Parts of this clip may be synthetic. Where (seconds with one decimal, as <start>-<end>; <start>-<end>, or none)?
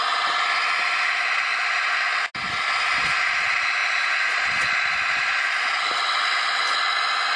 3.8-6.1